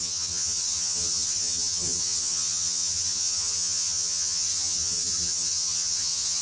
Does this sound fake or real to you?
fake